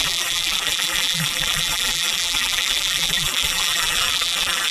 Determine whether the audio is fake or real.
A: fake